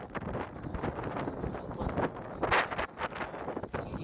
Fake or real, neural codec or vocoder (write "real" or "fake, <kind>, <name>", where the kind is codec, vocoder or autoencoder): real